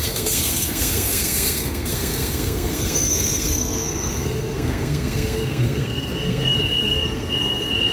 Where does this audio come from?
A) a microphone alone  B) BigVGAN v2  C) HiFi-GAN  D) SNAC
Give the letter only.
D